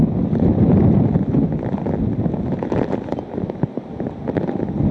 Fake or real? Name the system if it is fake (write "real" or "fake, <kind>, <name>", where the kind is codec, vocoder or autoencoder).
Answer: real